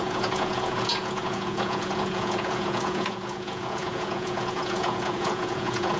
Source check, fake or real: fake